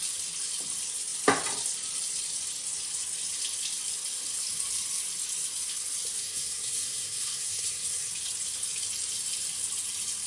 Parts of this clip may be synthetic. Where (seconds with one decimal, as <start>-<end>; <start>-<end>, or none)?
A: 6.2-8.1

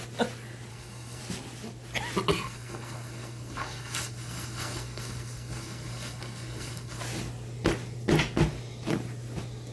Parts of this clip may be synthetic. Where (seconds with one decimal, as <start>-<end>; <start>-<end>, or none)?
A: 0.7-1.2; 2.3-7.0

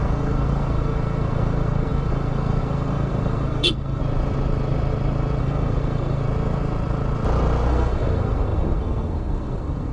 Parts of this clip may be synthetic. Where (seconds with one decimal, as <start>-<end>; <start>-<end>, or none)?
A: 0.0-4.0; 5.4-6.2; 7.7-9.9

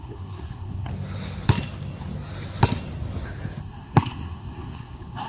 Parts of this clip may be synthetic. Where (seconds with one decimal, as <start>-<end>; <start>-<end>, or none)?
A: 0.0-0.9; 3.6-5.3

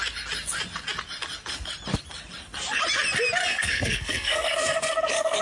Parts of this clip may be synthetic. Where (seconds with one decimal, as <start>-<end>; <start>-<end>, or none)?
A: 3.4-5.4

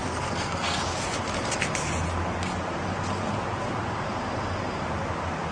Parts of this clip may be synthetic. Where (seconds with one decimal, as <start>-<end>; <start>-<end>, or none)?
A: 0.0-0.8

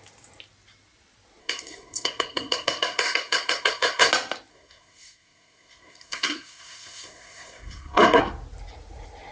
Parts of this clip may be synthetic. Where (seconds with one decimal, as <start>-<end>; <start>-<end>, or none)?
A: 1.4-4.1; 4.5-8.2

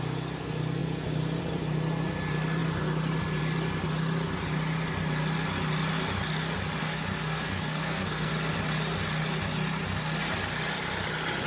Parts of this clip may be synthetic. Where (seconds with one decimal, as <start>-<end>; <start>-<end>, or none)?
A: 6.8-8.3